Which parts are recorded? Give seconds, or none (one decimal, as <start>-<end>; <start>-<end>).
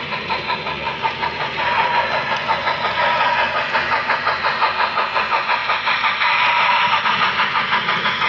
5.6-7.0